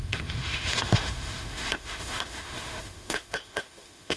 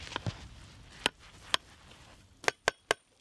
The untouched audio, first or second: second